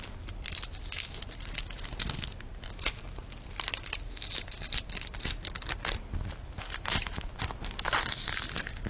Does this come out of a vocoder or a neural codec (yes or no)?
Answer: no